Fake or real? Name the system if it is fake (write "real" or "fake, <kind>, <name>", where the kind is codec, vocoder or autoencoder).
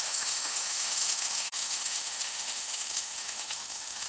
fake, autoencoder, DAC-VAE